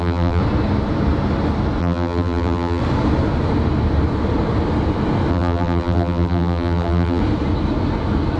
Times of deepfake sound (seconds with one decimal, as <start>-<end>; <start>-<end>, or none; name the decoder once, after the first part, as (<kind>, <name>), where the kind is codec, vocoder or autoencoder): 0.0-0.4 (vocoder, BigVGAN v2); 1.8-2.8; 5.3-7.2